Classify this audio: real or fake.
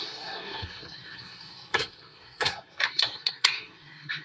fake